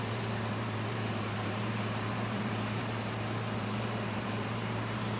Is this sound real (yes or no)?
no